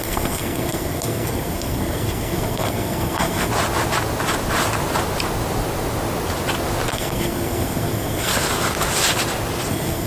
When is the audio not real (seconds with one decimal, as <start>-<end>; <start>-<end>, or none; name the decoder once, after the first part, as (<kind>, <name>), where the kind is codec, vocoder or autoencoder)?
0.0-3.5 (codec, SNAC); 6.9-8.3; 9.7-10.1